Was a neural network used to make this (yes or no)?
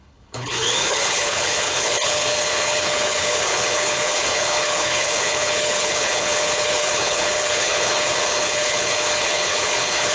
yes